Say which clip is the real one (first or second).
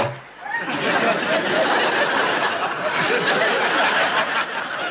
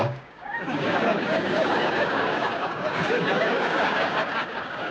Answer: first